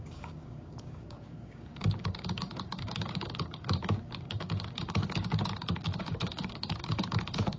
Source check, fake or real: fake